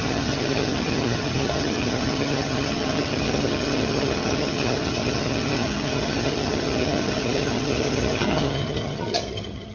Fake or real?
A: fake